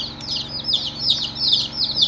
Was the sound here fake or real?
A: real